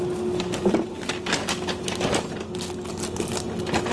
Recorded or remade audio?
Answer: recorded